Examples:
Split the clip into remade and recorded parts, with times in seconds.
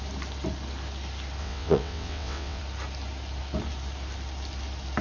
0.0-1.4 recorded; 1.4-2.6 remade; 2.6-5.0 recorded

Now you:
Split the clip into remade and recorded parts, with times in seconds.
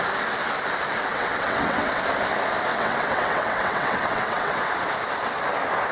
0.0-1.1 recorded; 1.1-2.0 remade; 2.0-2.7 recorded; 2.7-4.6 remade; 4.6-5.9 recorded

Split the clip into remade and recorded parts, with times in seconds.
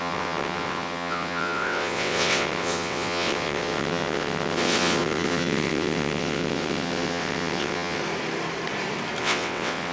0.0-8.0 remade; 8.0-9.2 recorded; 9.2-9.9 remade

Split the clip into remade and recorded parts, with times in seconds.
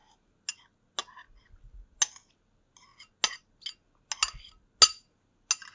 0.0-5.7 recorded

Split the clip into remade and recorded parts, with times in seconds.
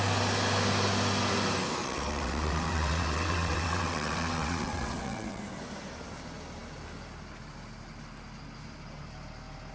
0.0-1.8 recorded; 1.8-5.4 remade; 5.4-9.7 recorded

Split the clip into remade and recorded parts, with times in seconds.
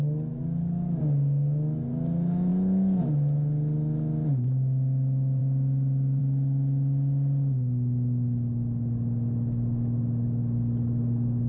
0.0-11.5 recorded